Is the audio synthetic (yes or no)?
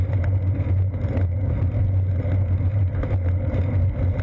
no